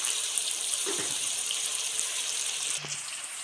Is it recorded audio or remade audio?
remade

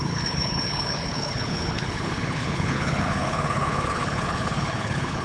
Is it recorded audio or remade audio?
remade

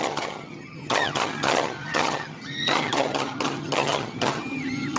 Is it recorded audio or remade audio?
remade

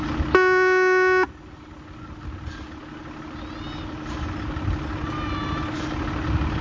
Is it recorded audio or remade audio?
recorded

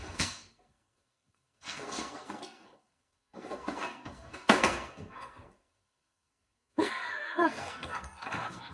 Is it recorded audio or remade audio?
remade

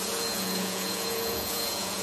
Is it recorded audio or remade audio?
remade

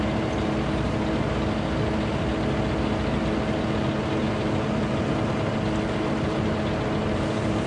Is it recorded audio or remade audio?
recorded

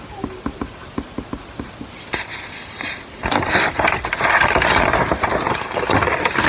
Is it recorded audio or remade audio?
recorded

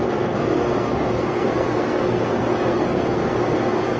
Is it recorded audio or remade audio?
remade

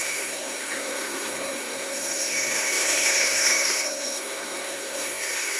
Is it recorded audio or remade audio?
remade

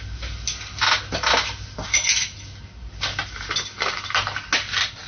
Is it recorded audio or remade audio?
recorded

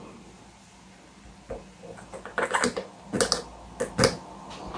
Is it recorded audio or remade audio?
recorded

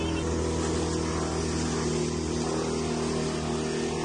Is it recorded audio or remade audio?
recorded